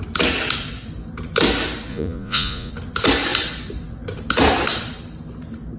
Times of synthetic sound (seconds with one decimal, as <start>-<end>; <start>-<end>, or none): 1.9-2.7